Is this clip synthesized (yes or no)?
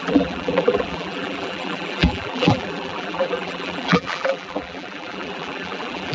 yes